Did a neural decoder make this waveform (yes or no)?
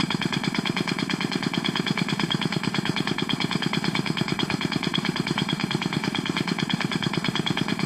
yes